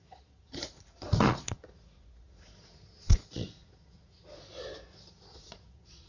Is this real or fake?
fake